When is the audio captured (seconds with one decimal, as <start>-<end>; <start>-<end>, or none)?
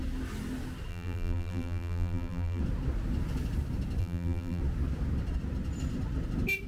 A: 0.0-0.9; 2.6-4.0; 4.6-6.7